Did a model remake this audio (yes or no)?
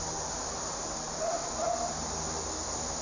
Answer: no